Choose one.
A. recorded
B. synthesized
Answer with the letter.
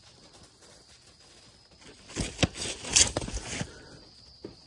A